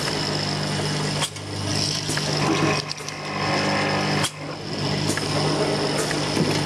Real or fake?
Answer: real